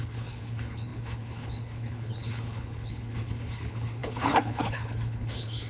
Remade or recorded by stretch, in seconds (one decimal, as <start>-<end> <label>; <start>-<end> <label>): 0.0-5.7 remade